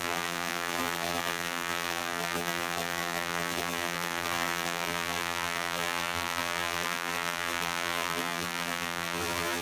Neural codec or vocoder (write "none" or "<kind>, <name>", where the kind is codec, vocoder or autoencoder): vocoder, BigVGAN v2